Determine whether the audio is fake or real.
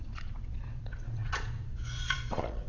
fake